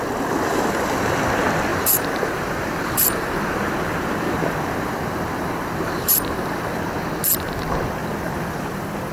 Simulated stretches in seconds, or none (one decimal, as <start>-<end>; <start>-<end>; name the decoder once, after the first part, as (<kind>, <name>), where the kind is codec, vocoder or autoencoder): 0.5-1.0 (vocoder, BigVGAN v2); 1.7-6.8; 8.0-9.1